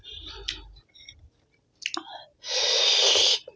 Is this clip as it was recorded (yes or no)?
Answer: yes